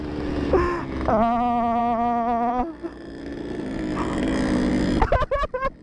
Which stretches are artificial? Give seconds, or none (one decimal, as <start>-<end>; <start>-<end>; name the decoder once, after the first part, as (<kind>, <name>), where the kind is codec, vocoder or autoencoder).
none